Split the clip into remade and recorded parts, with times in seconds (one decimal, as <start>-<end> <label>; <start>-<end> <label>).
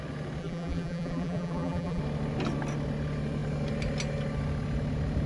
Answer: 0.0-0.4 recorded; 0.4-2.0 remade; 2.0-5.3 recorded